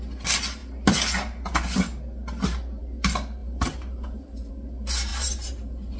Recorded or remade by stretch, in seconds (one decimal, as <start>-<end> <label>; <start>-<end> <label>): 0.0-3.4 recorded; 3.4-4.5 remade; 4.5-5.1 recorded; 5.1-6.0 remade